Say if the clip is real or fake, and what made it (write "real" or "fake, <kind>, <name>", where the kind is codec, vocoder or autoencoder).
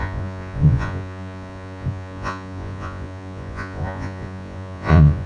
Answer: fake, vocoder, Vocos